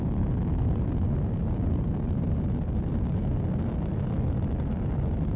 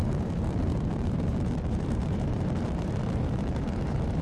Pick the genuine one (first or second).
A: first